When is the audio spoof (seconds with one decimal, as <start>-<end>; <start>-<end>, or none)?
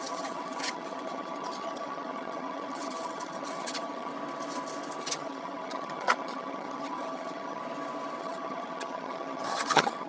0.0-4.1; 5.0-7.6; 8.2-10.1